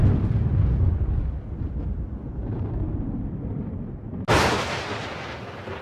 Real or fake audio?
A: real